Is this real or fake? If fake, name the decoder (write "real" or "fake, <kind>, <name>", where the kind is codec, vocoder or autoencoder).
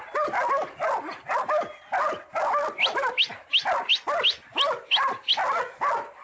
real